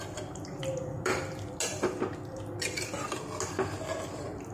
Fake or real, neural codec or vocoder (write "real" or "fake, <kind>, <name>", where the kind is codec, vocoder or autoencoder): real